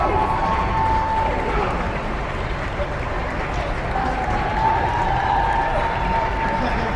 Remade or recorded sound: recorded